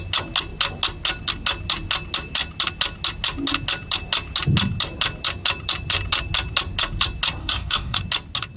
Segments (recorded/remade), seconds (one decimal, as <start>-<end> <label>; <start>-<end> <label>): 0.0-7.4 recorded; 7.4-8.0 remade; 8.0-8.6 recorded